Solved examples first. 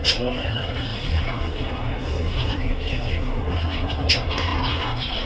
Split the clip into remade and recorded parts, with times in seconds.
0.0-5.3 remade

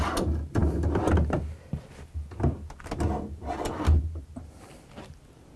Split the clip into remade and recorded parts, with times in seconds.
0.0-5.6 recorded

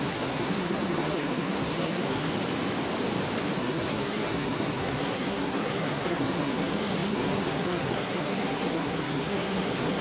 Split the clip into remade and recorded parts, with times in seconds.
0.0-2.3 remade; 2.3-3.6 recorded; 3.6-10.0 remade

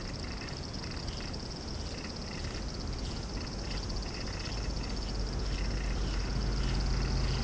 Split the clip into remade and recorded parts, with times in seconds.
0.0-7.4 recorded